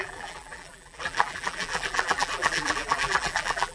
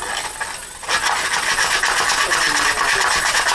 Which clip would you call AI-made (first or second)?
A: first